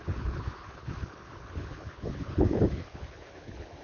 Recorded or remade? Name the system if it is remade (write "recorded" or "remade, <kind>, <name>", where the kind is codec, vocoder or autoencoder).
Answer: remade, codec, HILCodec